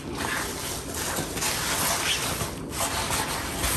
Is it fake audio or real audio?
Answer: real